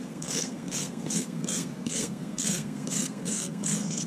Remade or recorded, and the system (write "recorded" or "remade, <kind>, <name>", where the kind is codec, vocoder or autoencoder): remade, codec, SNAC